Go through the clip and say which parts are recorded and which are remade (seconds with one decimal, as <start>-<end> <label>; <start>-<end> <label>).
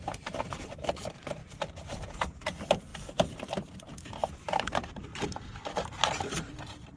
0.0-5.1 remade; 5.1-6.4 recorded; 6.4-7.0 remade